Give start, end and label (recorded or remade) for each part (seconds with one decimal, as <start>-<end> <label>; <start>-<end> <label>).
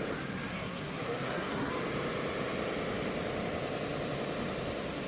0.0-0.5 recorded; 0.5-1.7 remade; 1.7-5.1 recorded